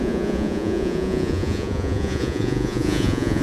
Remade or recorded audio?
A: remade